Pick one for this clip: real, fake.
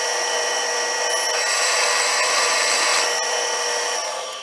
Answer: real